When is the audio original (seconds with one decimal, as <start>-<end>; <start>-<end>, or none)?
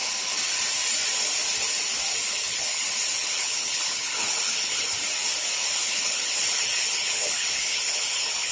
0.0-2.3; 2.8-3.2; 5.0-5.6